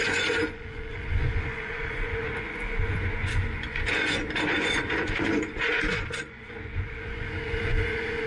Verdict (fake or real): fake